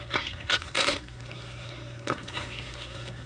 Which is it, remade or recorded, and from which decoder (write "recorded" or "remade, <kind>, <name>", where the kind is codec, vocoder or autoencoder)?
remade, codec, SNAC